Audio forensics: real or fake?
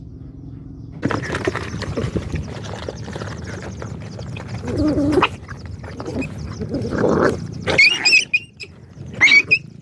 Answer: real